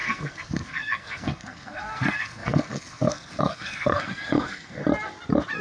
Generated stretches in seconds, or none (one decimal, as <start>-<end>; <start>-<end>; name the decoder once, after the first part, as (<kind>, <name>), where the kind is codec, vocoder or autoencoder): 0.0-4.8 (codec, SNAC)